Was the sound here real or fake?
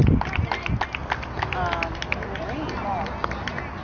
real